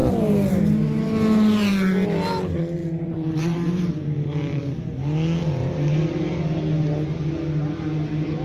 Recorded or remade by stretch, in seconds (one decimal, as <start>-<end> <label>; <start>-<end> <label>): 0.0-2.8 recorded; 2.8-4.6 remade; 4.6-5.6 recorded; 5.6-6.2 remade; 6.2-8.4 recorded